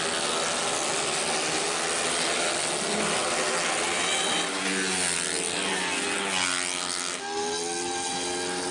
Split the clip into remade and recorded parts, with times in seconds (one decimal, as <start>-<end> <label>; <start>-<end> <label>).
0.0-8.7 recorded